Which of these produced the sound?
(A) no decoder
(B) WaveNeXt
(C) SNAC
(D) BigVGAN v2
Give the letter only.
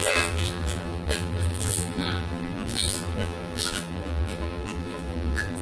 D